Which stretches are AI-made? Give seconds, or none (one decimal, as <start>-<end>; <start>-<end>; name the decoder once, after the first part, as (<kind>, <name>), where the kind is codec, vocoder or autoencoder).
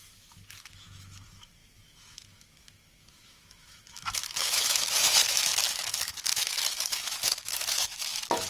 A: 0.0-8.5 (autoencoder, DAC-VAE)